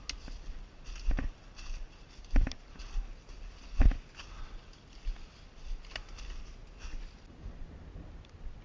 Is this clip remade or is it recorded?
recorded